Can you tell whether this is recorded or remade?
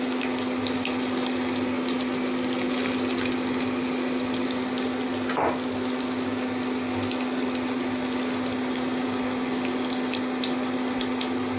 recorded